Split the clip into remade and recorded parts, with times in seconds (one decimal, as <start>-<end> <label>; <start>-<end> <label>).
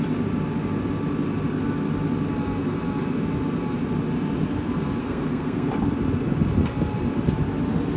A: 0.0-5.0 recorded; 5.0-5.7 remade; 5.7-8.0 recorded